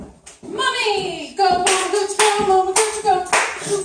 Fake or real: real